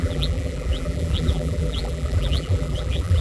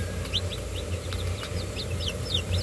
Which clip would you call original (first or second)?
second